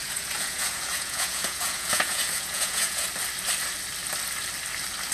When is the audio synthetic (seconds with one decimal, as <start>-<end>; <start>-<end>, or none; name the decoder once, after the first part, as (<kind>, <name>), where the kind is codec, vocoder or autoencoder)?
0.0-3.1 (vocoder, Vocos)